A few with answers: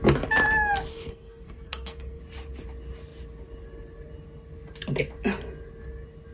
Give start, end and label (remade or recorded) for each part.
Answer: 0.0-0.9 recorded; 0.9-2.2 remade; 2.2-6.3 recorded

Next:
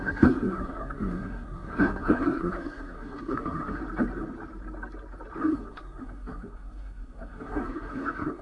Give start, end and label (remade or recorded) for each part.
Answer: 0.0-3.8 remade; 3.8-5.4 recorded; 5.4-8.4 remade

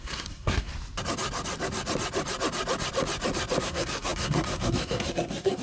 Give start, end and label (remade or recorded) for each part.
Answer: 0.0-0.7 remade; 0.7-3.6 recorded; 3.6-5.6 remade

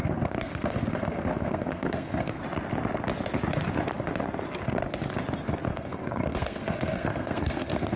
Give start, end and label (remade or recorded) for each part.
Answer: 0.0-2.4 remade; 2.4-5.7 recorded; 5.7-8.0 remade